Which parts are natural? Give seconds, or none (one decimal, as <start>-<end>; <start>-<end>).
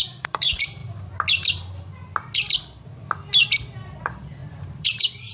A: 0.8-4.0